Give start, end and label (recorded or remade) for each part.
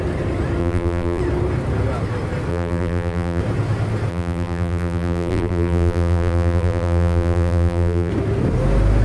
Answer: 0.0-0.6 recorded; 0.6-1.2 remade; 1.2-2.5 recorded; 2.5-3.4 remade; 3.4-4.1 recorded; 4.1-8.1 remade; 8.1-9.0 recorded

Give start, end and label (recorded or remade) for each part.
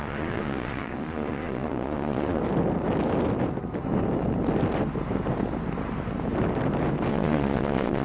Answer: 0.0-2.4 remade; 2.4-7.1 recorded; 7.1-8.0 remade